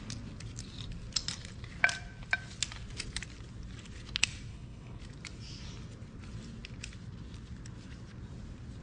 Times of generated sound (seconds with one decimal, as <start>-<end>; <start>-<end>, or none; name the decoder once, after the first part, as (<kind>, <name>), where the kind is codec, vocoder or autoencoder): 4.5-5.0 (codec, HILCodec)

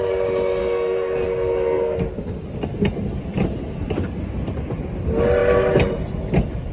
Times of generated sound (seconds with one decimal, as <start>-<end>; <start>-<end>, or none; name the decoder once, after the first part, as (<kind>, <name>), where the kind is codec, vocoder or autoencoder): 0.6-2.0 (codec, SNAC)

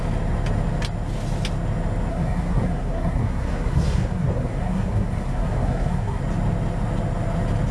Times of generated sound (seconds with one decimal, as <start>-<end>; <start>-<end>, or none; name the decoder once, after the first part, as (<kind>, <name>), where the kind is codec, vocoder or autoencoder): 2.1-6.2 (codec, SNAC)

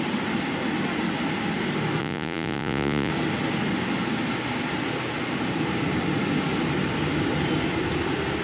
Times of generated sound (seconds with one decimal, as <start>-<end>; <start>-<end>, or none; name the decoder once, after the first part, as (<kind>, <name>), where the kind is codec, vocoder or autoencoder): 2.0-3.1 (vocoder, Vocos)